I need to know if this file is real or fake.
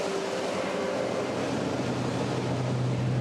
real